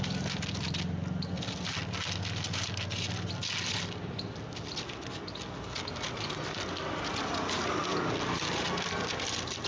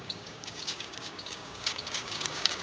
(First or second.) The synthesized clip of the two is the second